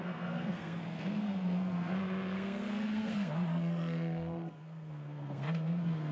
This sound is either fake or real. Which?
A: fake